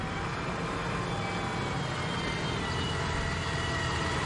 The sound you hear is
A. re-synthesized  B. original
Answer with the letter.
B